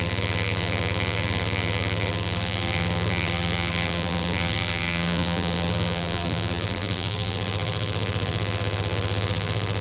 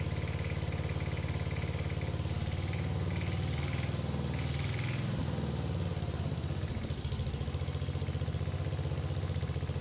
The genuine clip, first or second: second